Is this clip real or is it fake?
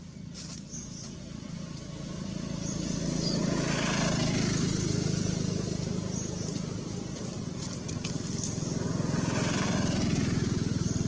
real